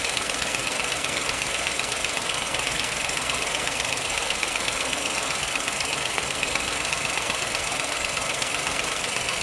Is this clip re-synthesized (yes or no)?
yes